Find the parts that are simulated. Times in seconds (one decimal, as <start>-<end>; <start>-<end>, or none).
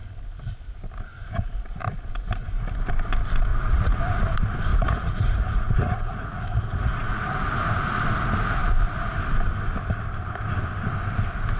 3.5-4.0; 4.7-7.2